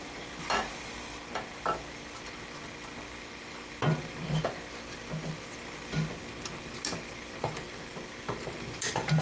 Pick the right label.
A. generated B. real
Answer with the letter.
B